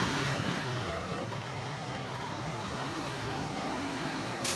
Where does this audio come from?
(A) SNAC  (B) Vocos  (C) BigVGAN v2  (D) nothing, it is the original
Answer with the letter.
A